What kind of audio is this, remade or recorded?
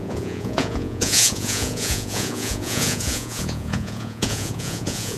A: remade